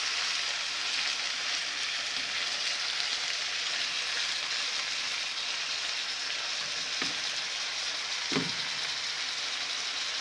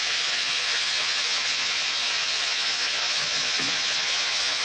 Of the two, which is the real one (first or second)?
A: first